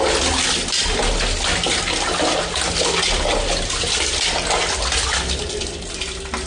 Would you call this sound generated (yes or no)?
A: no